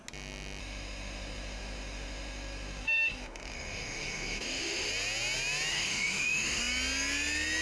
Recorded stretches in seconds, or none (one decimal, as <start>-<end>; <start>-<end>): 0.0-0.6; 4.9-5.7; 6.6-7.6